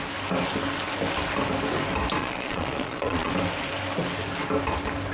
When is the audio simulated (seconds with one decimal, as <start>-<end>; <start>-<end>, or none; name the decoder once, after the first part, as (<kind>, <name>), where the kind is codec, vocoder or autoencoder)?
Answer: 2.2-3.3 (vocoder, Vocos)